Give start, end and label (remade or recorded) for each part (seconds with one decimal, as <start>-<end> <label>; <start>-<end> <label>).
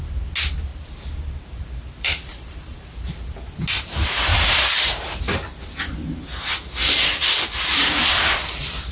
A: 0.0-0.7 recorded; 0.7-3.1 remade; 3.1-4.3 recorded; 4.3-5.2 remade; 5.2-6.8 recorded; 6.8-7.9 remade; 7.9-8.9 recorded